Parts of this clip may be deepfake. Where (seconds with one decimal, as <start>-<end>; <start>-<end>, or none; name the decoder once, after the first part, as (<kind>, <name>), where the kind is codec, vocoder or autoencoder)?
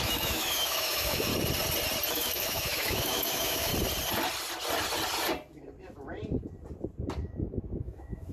0.0-1.3 (autoencoder, DAC-VAE); 2.1-3.7; 7.8-8.3